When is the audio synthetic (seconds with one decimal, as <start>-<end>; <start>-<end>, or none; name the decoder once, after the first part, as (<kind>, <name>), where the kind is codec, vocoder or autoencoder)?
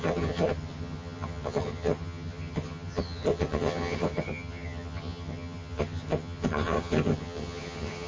0.0-8.1 (vocoder, HiFi-GAN)